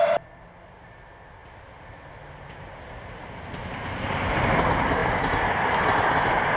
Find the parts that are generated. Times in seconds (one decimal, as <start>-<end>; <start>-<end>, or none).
none